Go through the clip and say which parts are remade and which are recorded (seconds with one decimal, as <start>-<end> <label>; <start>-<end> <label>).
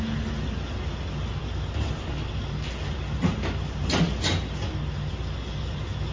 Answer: 0.0-6.1 recorded